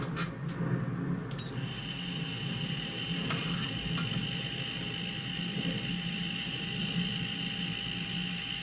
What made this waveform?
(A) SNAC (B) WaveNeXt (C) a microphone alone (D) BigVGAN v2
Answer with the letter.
C